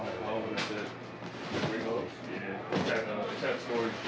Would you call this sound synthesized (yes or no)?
no